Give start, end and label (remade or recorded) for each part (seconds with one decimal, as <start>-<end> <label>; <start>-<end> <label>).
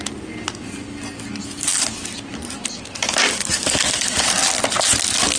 0.0-5.4 recorded